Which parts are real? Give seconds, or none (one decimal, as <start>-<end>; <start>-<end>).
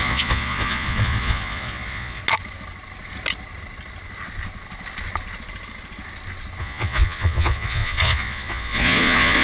2.2-6.6